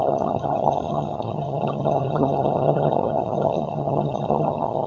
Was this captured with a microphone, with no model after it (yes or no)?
no